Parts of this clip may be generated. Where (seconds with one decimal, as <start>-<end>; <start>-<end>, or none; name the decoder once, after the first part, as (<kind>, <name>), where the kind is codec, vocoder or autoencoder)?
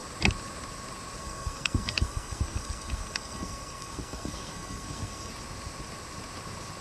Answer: 1.2-5.3 (codec, SNAC)